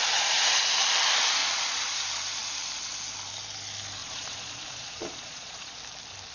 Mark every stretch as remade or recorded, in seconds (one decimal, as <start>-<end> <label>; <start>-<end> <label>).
0.0-1.4 recorded; 1.4-2.0 remade; 2.0-4.0 recorded; 4.0-5.8 remade; 5.8-6.3 recorded